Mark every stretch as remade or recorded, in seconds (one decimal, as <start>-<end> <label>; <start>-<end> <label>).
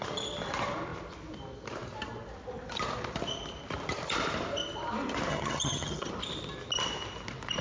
0.0-5.3 recorded; 5.3-6.1 remade; 6.1-7.6 recorded